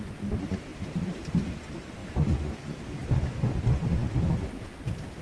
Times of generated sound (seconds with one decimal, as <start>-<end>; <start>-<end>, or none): 0.7-1.3; 2.0-3.6